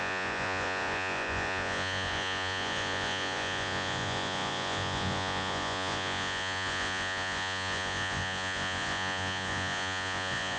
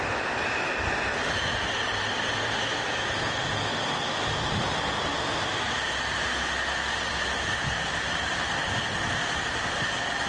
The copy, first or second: first